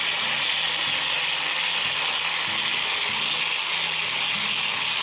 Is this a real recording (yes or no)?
yes